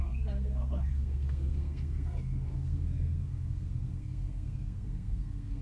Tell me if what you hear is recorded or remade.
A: remade